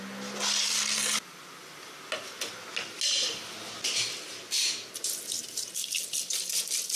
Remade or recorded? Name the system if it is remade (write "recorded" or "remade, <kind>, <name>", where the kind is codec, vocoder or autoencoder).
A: recorded